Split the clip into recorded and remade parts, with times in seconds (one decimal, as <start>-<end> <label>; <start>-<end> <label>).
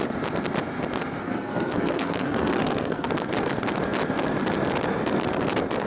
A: 0.0-1.2 recorded; 1.2-3.1 remade; 3.1-5.9 recorded